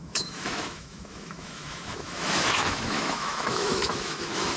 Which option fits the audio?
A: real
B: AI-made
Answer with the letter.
B